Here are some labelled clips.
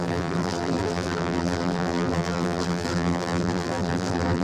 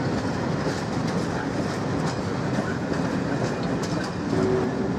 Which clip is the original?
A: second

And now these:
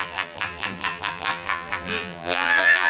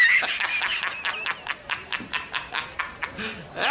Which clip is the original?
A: second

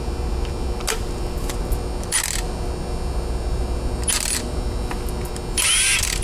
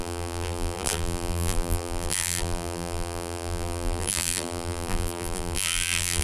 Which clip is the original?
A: first